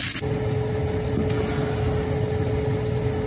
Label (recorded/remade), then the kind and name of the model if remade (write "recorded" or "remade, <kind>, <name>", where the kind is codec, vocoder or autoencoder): recorded